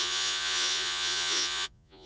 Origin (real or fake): fake